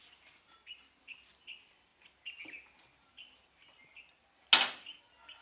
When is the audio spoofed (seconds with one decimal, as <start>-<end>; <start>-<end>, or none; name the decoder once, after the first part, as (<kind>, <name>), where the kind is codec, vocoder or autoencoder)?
none